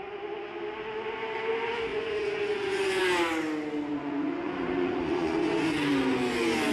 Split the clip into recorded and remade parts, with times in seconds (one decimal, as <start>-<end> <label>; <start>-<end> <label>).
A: 0.0-1.9 recorded; 1.9-3.0 remade; 3.0-3.9 recorded; 3.9-5.9 remade; 5.9-6.7 recorded